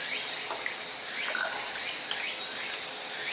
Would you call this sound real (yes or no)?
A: yes